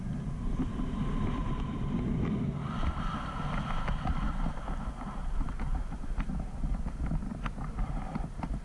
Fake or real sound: fake